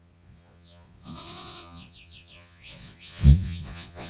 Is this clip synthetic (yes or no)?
yes